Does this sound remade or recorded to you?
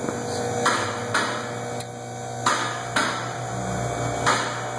recorded